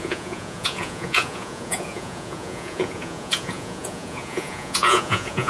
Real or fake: fake